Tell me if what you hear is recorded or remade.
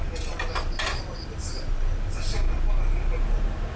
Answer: recorded